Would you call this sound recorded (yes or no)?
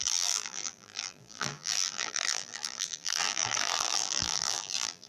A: no